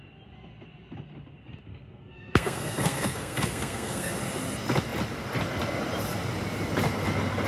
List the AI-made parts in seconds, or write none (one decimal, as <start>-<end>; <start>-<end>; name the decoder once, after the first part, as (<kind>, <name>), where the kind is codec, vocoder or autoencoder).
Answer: 1.7-4.1 (codec, SNAC)